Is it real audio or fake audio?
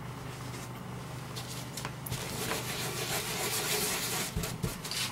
real